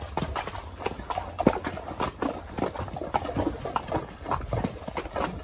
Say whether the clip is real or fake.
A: real